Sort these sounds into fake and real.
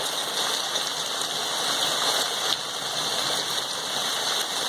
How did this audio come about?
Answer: real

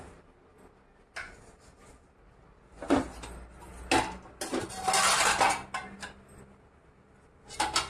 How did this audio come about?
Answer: real